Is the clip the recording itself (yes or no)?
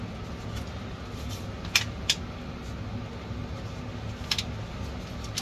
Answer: yes